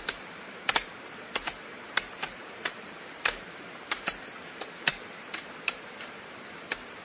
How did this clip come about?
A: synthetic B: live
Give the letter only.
A